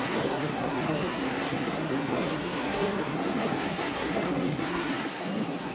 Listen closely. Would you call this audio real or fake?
fake